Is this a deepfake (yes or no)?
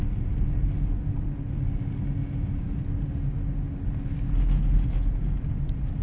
no